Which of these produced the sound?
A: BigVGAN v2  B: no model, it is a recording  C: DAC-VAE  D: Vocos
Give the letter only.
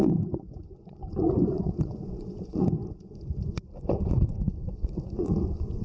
D